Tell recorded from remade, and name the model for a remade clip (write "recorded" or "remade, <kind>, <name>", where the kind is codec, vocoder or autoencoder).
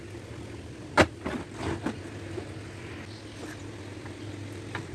recorded